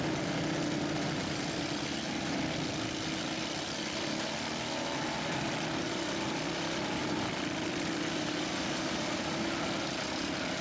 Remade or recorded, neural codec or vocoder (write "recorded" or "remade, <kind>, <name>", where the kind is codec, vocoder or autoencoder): recorded